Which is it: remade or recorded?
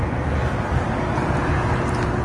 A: recorded